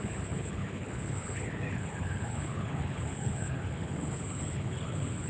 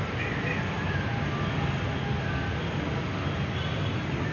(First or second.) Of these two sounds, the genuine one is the second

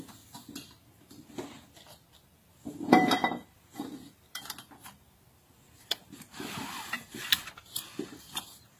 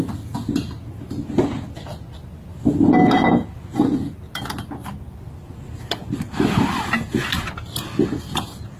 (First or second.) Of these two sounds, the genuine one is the second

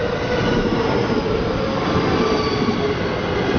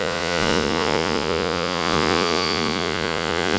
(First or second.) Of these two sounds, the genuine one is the first